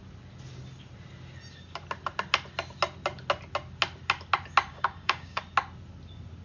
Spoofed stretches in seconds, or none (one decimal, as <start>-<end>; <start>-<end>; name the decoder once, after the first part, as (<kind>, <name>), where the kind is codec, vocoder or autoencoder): 4.7-5.4 (codec, DAC)